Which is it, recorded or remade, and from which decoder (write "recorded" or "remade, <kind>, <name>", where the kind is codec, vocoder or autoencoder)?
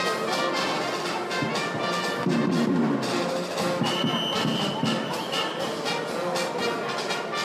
recorded